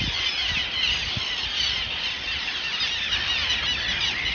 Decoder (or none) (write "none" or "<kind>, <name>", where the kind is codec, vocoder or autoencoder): none